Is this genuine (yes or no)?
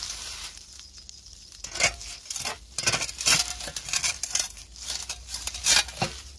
yes